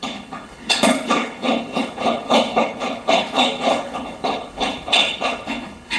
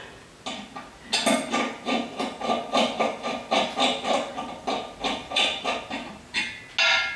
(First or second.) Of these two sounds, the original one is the second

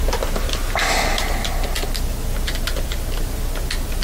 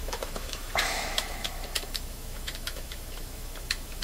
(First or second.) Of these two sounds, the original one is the first